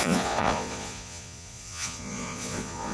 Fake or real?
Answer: fake